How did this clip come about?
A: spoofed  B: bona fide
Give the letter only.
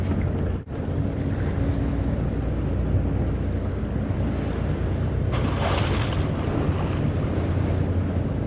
B